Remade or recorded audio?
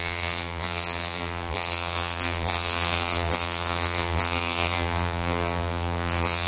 remade